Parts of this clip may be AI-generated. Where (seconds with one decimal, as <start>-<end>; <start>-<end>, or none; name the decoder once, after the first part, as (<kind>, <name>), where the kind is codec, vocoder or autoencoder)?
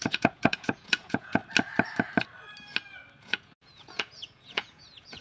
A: 0.0-1.4 (vocoder, Vocos); 3.2-5.2